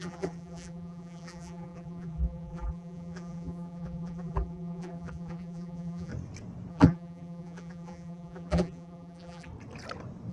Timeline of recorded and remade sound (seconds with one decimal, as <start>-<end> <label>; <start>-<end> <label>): 0.0-6.1 remade; 6.1-6.7 recorded; 6.7-9.5 remade; 9.5-10.3 recorded

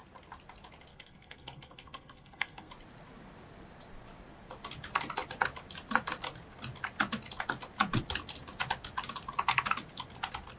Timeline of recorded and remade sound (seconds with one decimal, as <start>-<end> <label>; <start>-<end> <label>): 0.0-0.9 recorded; 0.9-2.7 remade; 2.7-10.6 recorded

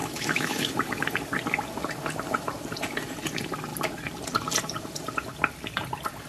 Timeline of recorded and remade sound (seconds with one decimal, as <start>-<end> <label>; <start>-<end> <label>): 0.0-0.7 remade; 0.7-6.3 recorded